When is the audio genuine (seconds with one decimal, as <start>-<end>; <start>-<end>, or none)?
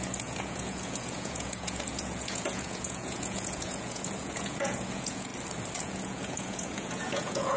5.3-5.8